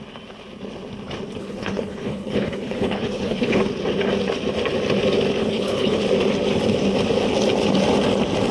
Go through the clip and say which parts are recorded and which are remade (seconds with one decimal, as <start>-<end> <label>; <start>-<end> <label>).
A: 0.0-1.4 recorded; 1.4-3.6 remade; 3.6-5.4 recorded; 5.4-6.0 remade; 6.0-8.5 recorded